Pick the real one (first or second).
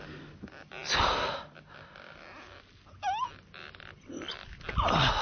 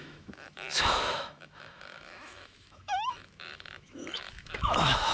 first